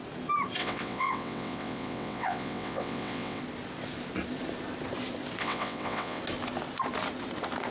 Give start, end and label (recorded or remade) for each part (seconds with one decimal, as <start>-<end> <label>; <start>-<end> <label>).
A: 0.0-0.6 recorded; 0.6-3.4 remade; 3.4-5.4 recorded; 5.4-6.2 remade; 6.2-7.7 recorded